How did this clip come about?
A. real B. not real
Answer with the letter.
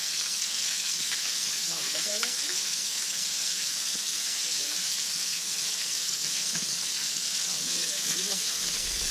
B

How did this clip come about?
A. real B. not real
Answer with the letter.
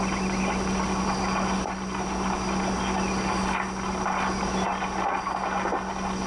A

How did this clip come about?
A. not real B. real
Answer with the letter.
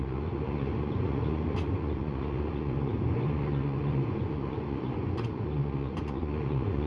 A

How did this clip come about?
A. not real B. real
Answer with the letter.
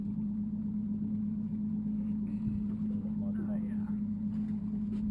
B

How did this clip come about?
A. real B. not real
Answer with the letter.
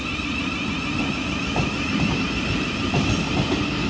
A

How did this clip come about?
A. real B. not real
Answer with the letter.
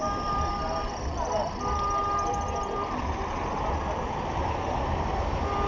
A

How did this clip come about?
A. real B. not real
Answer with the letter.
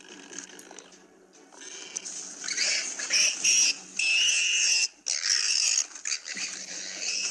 A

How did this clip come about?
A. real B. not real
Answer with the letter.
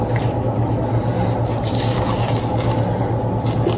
A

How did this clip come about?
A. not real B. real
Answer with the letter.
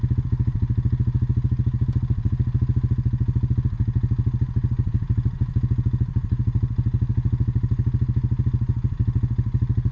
B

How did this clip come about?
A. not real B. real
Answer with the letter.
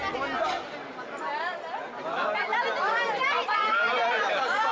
B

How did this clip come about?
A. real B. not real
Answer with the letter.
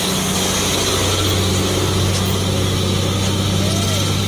A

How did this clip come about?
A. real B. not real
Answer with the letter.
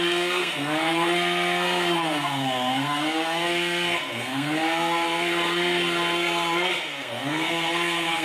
B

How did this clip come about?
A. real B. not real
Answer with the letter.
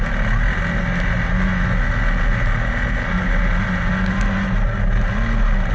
A